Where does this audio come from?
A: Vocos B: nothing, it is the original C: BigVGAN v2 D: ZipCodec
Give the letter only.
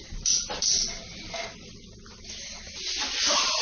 B